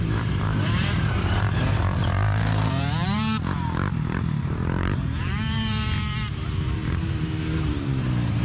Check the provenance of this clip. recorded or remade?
remade